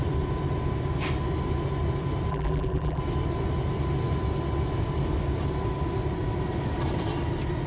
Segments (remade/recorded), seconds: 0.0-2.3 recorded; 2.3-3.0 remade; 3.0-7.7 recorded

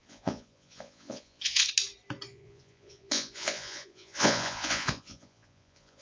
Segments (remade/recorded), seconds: 0.0-1.7 remade; 1.7-2.3 recorded; 2.3-6.0 remade

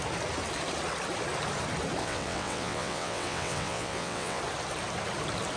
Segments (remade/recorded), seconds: 0.0-2.0 recorded; 2.0-4.4 remade; 4.4-5.6 recorded

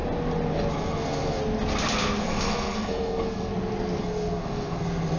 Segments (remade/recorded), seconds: 0.0-0.7 recorded; 0.7-1.4 remade; 1.4-2.2 recorded; 2.2-3.5 remade; 3.5-4.0 recorded; 4.0-5.2 remade

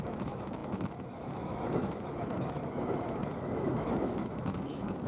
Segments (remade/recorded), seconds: 0.0-5.1 remade

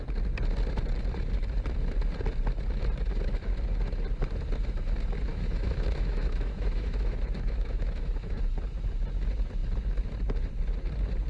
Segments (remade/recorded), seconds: 0.0-5.3 recorded; 5.3-8.4 remade; 8.4-11.3 recorded

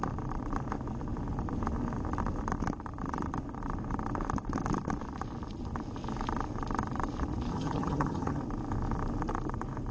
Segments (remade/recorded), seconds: 0.0-7.5 recorded; 7.5-8.4 remade; 8.4-9.9 recorded